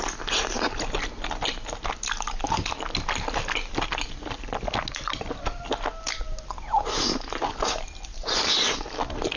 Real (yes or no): yes